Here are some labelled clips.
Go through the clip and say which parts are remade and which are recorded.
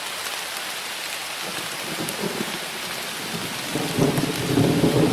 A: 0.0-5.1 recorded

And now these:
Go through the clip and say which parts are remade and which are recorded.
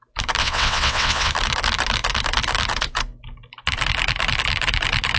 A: 0.0-0.4 recorded; 0.4-1.3 remade; 1.3-5.2 recorded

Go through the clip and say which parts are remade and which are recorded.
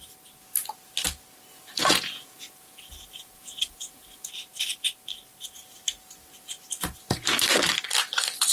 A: 0.0-1.5 recorded; 1.5-4.3 remade; 4.3-8.5 recorded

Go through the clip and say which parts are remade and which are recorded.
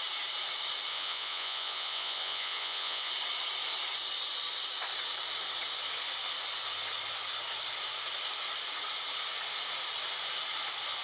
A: 0.0-0.9 recorded; 0.9-3.1 remade; 3.1-11.0 recorded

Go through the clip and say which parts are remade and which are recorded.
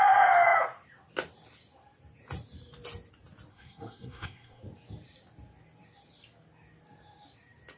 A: 0.0-3.5 recorded; 3.5-4.6 remade; 4.6-7.8 recorded